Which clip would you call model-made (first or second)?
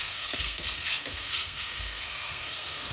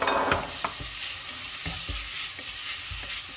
first